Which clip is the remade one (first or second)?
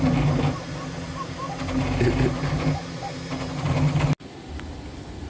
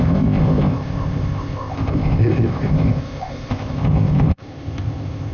second